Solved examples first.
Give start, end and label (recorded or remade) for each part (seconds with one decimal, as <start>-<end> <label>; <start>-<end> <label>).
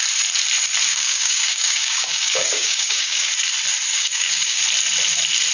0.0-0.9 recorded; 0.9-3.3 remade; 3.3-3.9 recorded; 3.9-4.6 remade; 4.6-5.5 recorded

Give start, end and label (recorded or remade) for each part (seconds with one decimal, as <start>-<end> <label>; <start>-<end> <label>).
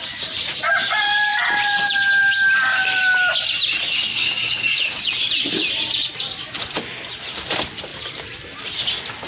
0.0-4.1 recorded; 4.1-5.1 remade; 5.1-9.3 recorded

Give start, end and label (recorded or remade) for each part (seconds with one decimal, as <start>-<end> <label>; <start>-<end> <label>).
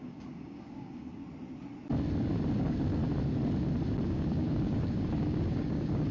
0.0-1.2 remade; 1.2-2.6 recorded; 2.6-3.0 remade; 3.0-4.1 recorded; 4.1-6.1 remade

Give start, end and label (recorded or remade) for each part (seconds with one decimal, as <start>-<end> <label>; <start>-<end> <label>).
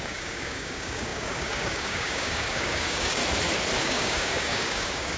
0.0-3.2 remade; 3.2-3.8 recorded; 3.8-5.2 remade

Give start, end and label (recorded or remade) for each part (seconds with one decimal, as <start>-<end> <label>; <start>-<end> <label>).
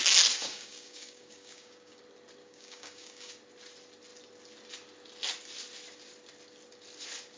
0.0-0.4 recorded; 0.4-2.0 remade; 2.0-2.4 recorded; 2.4-3.3 remade; 3.3-7.4 recorded